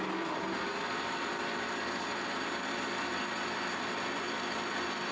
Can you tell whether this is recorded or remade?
recorded